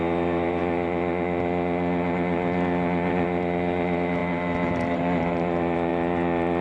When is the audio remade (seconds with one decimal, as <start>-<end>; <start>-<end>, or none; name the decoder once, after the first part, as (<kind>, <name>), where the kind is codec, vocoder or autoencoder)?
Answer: 0.0-0.6 (vocoder, BigVGAN v2); 3.1-4.2; 5.0-5.9